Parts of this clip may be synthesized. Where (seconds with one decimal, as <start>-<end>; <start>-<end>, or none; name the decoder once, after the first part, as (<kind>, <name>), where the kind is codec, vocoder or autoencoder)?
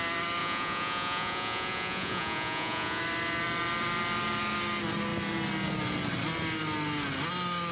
0.4-3.0 (vocoder, Vocos)